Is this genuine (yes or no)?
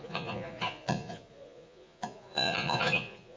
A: no